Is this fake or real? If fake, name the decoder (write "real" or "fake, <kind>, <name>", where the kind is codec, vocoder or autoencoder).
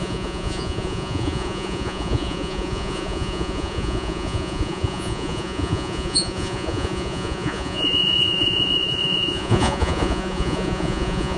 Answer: fake, vocoder, Vocos